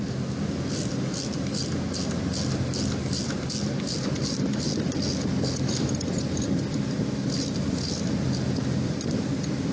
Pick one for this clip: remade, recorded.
recorded